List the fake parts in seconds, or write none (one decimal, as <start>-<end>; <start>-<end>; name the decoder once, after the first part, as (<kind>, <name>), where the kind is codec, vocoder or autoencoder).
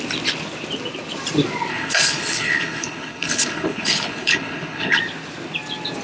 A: 1.7-5.0 (codec, HILCodec)